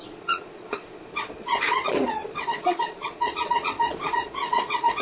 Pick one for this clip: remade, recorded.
remade